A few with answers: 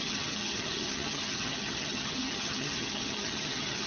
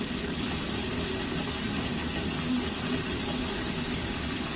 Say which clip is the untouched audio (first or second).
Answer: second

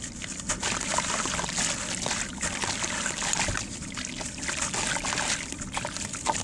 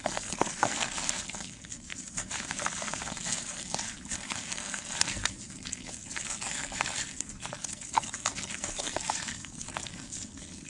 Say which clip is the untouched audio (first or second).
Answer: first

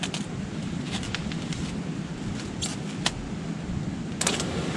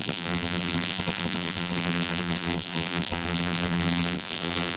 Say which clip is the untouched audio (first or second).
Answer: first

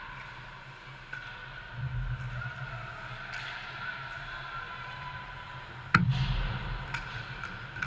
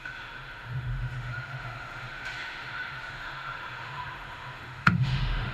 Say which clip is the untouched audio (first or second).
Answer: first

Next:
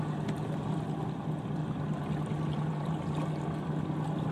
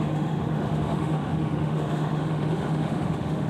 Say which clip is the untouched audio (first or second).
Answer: first